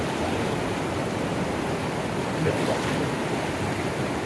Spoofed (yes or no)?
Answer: no